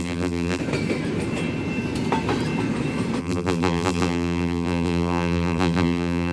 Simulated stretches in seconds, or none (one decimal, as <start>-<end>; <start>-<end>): 0.0-0.6; 3.2-6.3